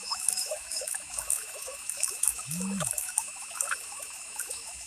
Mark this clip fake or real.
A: fake